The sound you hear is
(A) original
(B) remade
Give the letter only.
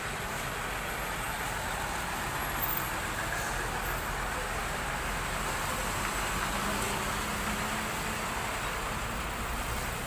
A